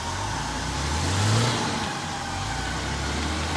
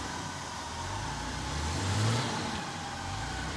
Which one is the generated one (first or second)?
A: second